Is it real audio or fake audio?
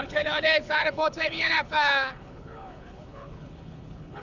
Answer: fake